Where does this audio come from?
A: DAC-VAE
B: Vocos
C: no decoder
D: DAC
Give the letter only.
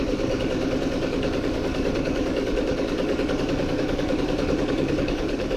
D